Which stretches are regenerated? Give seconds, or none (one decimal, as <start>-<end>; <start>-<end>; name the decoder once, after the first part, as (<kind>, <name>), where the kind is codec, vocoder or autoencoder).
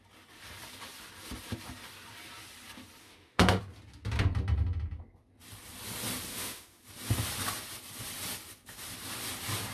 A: 3.0-3.6 (autoencoder, DAC-VAE); 6.3-6.8